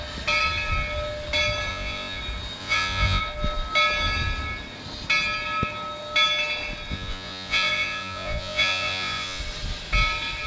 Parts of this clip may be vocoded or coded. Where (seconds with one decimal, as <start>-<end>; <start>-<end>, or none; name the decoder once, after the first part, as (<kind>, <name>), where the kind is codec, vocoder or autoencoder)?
1.7-2.2 (vocoder, Vocos); 2.6-3.2; 6.9-9.4